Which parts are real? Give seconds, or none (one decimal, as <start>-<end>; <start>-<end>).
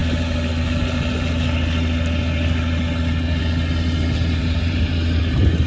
0.0-4.4; 5.2-5.7